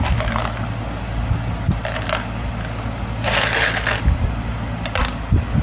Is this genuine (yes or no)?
yes